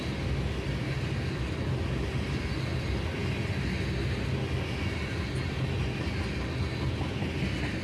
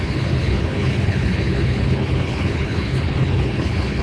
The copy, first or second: second